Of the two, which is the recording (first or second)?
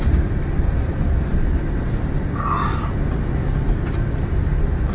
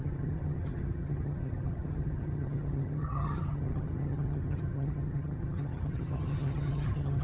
first